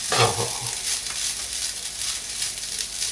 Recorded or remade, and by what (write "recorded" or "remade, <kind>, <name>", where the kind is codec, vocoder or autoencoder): recorded